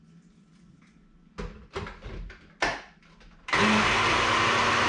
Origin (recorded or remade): recorded